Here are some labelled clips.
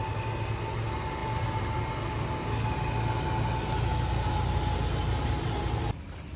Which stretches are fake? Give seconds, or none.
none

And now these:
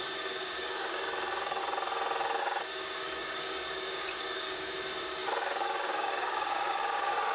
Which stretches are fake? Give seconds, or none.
0.0-1.6 (codec, DAC); 2.4-7.3

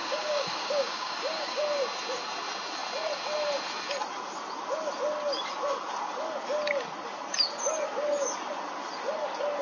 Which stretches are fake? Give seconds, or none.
0.0-1.6 (codec, DAC)

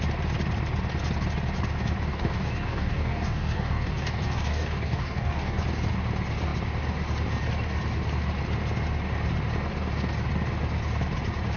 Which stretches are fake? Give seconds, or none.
2.1-5.6 (codec, DAC)

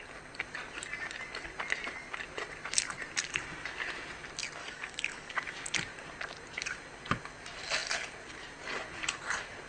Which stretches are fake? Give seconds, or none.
4.6-5.3 (codec, DAC)